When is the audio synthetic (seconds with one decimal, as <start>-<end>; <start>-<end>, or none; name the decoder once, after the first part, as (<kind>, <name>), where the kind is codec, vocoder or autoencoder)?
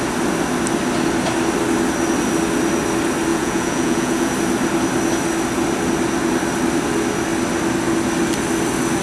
3.3-4.3 (vocoder, Vocos)